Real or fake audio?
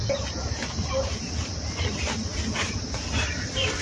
real